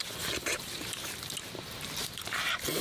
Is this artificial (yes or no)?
yes